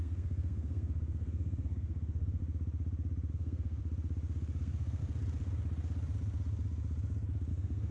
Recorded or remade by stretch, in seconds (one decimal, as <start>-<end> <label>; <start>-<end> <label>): 0.0-2.4 remade; 2.4-3.3 recorded; 3.3-3.8 remade; 3.8-4.6 recorded; 4.6-5.0 remade; 5.0-7.5 recorded; 7.5-7.9 remade